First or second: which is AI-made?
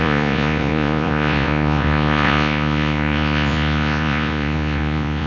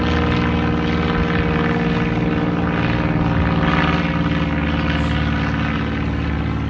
first